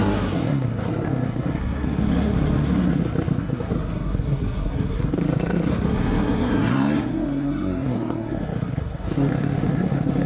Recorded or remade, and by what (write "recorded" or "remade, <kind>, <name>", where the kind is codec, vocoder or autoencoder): remade, codec, SNAC